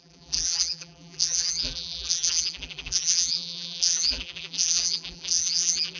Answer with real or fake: fake